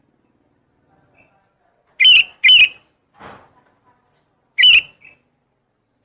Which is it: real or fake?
real